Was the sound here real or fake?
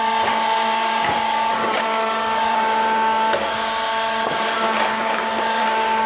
fake